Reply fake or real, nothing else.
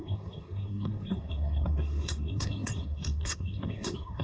fake